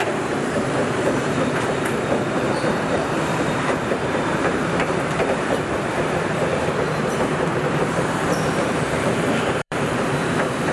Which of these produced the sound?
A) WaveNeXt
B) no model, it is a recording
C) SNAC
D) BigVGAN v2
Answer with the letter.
D